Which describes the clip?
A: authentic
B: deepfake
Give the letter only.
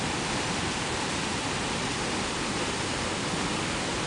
A